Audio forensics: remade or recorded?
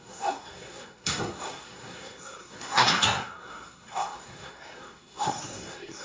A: remade